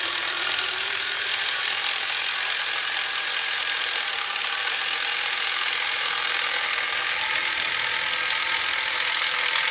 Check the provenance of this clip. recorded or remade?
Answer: recorded